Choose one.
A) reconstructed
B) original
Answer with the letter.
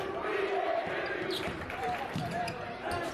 A